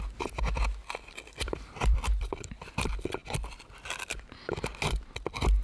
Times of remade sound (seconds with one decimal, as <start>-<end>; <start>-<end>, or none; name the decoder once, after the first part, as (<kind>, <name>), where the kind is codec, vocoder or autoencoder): 0.8-2.7 (vocoder, BigVGAN v2); 3.2-4.2